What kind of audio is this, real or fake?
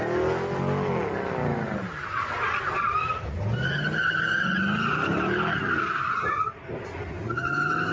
real